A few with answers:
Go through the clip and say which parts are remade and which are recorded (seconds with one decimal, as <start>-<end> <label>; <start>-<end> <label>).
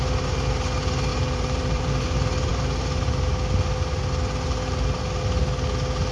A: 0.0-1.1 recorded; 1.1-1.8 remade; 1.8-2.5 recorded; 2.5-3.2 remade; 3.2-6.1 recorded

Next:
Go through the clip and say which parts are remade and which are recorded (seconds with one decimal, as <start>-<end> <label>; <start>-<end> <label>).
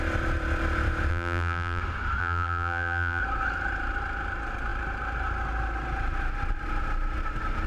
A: 0.0-1.1 recorded; 1.1-1.8 remade; 1.8-2.2 recorded; 2.2-3.2 remade; 3.2-7.7 recorded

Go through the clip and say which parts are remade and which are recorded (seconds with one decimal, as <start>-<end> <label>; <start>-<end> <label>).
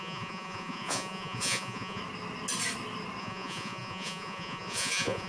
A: 0.0-2.0 remade; 2.0-3.2 recorded; 3.2-5.3 remade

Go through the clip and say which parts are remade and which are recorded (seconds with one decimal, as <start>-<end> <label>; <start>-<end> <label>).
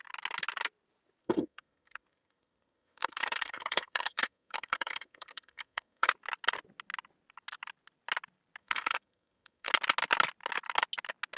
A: 0.0-1.2 recorded; 1.2-6.1 remade; 6.1-8.6 recorded; 8.6-9.7 remade; 9.7-11.4 recorded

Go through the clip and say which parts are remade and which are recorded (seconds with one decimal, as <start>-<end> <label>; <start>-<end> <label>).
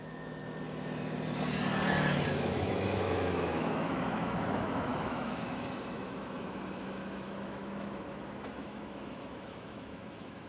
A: 0.0-0.4 remade; 0.4-2.3 recorded; 2.3-10.5 remade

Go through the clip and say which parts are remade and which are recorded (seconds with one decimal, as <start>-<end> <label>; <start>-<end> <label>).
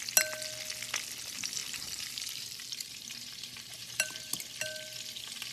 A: 0.0-1.6 recorded; 1.6-4.3 remade; 4.3-5.5 recorded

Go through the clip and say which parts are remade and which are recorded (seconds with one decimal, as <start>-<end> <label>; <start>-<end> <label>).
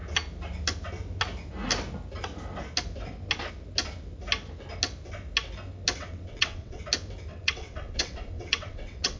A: 0.0-6.0 recorded; 6.0-6.8 remade; 6.8-7.3 recorded; 7.3-9.2 remade